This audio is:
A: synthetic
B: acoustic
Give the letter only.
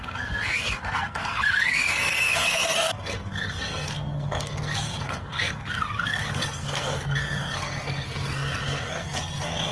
A